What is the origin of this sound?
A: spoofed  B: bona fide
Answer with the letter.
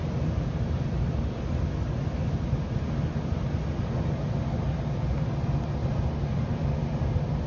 B